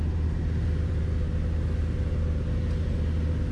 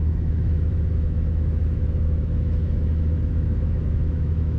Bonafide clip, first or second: first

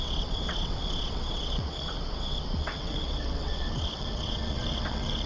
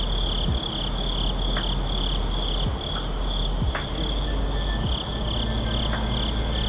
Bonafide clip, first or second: second